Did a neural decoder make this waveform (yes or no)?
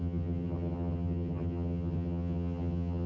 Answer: yes